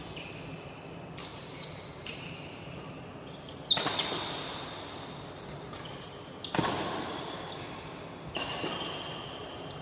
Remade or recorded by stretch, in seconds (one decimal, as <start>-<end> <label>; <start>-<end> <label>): 0.0-1.3 recorded; 1.3-2.6 remade; 2.6-9.8 recorded